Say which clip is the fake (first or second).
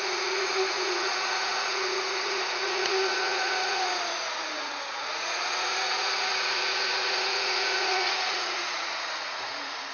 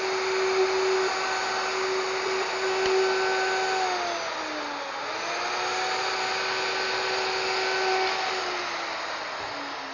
first